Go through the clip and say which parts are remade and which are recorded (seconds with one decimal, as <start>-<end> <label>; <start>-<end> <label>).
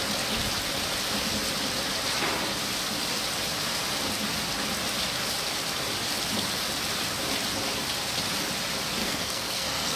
0.0-9.0 recorded; 9.0-10.0 remade